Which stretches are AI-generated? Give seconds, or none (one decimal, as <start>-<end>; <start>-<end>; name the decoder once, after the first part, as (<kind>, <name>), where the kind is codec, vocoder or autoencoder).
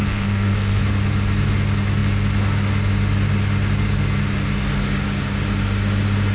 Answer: 0.0-0.8 (codec, SNAC)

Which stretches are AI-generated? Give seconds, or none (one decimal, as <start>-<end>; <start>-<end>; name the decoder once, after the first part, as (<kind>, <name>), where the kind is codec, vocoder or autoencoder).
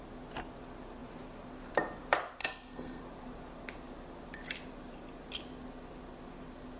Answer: 2.4-3.0 (codec, SNAC)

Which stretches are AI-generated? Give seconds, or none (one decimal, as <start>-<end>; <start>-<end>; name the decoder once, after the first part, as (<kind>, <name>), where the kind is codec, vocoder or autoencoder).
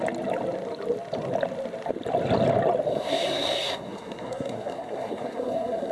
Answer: 2.9-5.9 (codec, SNAC)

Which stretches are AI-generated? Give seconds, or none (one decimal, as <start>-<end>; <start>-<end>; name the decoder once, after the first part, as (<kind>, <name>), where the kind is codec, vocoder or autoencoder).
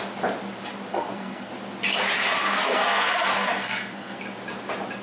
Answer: 0.9-1.5 (codec, SNAC); 2.4-4.2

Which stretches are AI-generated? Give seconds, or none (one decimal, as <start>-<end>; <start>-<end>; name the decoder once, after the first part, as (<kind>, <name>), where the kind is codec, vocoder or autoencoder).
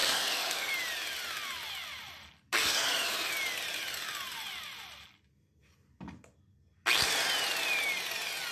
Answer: 0.0-0.7 (codec, SNAC); 2.6-3.3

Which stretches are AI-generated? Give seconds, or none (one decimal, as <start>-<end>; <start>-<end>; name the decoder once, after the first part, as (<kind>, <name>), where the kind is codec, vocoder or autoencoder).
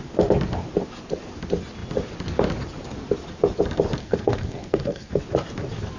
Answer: 4.0-5.2 (codec, SNAC)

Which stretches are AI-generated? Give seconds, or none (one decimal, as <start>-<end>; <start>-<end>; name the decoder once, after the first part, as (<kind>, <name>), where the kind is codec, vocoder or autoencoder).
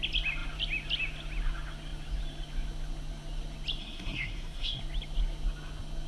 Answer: 3.8-4.8 (codec, SNAC)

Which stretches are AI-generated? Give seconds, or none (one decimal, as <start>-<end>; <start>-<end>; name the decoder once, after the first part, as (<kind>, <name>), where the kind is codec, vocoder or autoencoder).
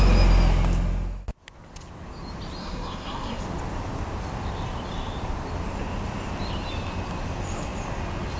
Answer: 2.6-3.4 (codec, SNAC)